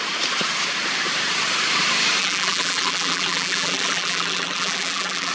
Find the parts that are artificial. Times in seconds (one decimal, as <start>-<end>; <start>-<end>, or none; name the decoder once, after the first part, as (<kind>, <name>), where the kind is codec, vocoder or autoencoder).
2.2-5.3 (vocoder, BigVGAN v2)